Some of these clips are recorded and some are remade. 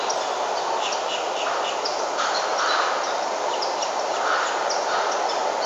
recorded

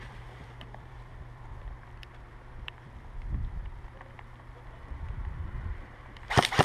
remade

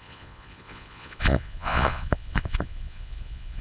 remade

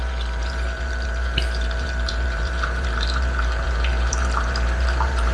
remade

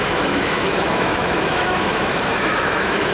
remade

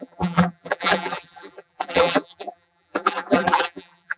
remade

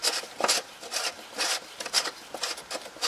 recorded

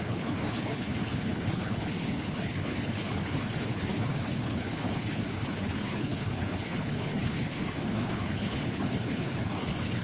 remade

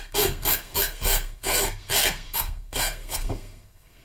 remade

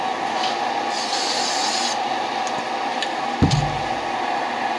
recorded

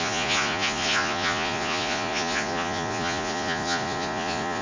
remade